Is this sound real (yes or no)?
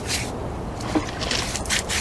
yes